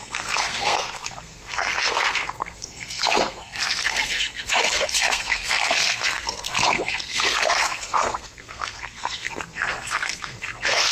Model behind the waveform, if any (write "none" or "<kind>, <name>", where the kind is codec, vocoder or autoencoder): codec, SNAC